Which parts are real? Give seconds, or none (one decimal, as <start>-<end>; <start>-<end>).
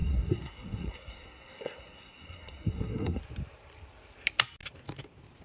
3.2-5.4